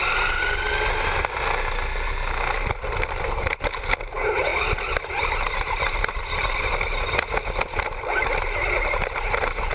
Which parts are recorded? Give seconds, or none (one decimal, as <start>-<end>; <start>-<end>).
0.0-9.7